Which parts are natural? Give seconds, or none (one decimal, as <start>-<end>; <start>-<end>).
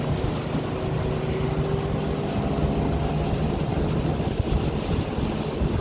0.0-5.8